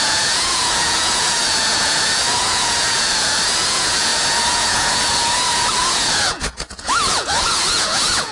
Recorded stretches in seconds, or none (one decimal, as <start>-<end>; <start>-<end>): none